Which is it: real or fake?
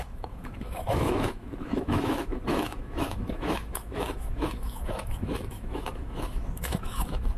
fake